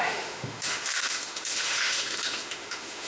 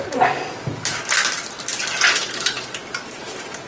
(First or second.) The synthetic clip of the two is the first